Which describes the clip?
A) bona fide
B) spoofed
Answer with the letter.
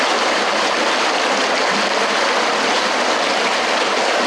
A